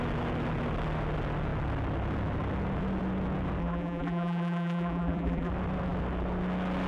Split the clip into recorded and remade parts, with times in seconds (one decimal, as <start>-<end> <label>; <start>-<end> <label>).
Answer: 0.0-3.6 recorded; 3.6-5.5 remade; 5.5-6.9 recorded